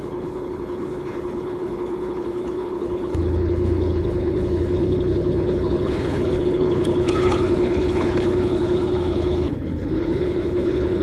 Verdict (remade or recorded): remade